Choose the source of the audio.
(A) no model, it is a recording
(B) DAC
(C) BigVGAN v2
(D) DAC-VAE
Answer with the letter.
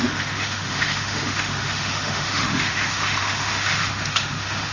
D